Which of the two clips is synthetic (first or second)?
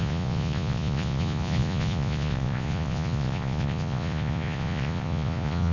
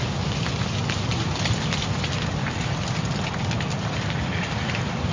first